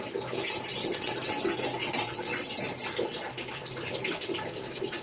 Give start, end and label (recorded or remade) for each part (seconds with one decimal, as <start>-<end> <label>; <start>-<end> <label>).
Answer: 0.0-0.8 recorded; 0.8-1.4 remade; 1.4-1.8 recorded; 1.8-2.6 remade; 2.6-5.0 recorded